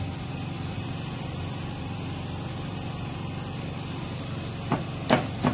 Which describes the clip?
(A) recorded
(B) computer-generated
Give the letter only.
B